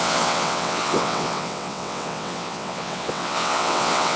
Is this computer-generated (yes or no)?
yes